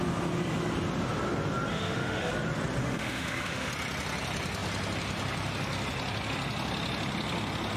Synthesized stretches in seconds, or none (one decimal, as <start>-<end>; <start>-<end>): 1.7-2.3; 2.8-3.7